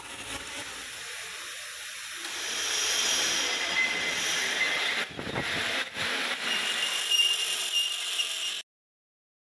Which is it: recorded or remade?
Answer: recorded